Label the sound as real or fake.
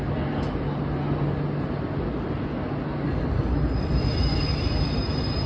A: real